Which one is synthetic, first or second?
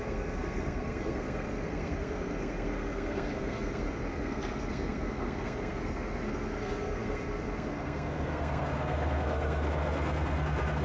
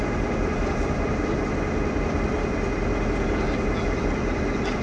first